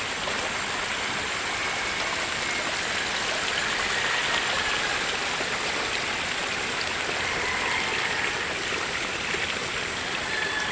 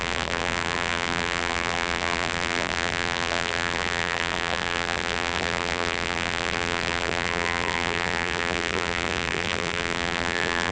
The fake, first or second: second